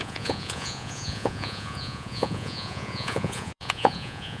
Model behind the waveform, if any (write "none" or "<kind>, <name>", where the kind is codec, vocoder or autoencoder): vocoder, Vocos